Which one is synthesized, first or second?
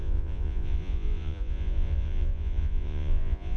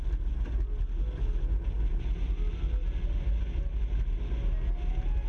first